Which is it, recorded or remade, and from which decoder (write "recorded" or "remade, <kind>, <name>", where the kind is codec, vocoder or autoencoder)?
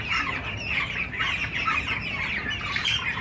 recorded